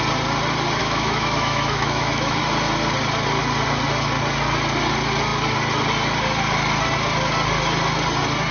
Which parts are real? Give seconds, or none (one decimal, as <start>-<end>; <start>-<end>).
0.0-0.8; 2.4-8.5